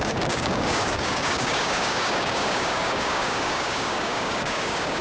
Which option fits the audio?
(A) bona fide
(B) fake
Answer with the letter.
B